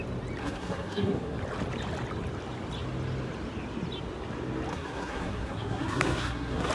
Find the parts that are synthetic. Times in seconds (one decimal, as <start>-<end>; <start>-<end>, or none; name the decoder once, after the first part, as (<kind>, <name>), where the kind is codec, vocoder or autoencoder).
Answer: 0.4-1.4 (codec, SNAC); 4.7-6.7